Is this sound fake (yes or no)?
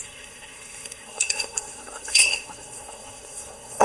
yes